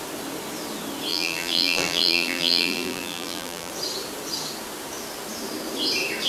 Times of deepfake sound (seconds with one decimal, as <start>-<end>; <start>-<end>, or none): 1.1-3.7